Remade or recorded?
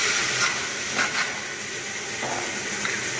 recorded